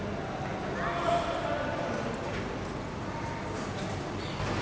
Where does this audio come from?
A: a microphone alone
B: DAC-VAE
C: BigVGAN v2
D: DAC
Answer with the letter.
A